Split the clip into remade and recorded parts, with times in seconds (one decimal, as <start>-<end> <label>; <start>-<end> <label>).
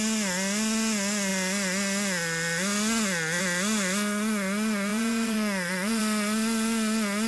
0.0-4.9 recorded; 4.9-6.0 remade; 6.0-7.3 recorded